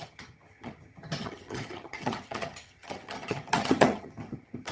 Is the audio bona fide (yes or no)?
no